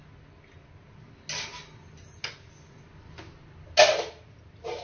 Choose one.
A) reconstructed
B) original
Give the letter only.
B